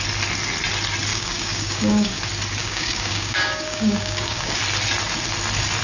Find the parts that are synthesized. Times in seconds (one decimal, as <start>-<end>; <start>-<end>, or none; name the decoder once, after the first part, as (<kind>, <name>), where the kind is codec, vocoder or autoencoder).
1.1-2.2 (codec, DAC); 2.6-4.6